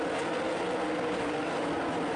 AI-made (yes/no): no